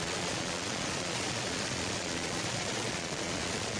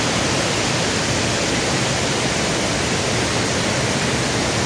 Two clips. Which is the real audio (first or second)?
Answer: second